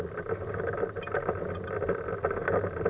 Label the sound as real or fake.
real